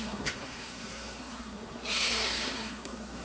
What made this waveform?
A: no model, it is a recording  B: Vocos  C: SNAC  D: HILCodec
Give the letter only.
C